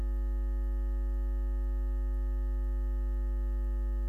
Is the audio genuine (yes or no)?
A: yes